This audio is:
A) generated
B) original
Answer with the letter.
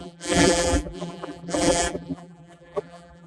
A